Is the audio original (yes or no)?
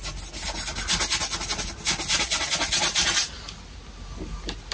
yes